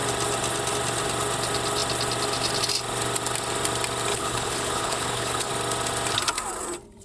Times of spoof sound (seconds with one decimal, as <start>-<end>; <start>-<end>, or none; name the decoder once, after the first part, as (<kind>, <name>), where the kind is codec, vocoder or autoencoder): 4.1-5.5 (codec, HILCodec)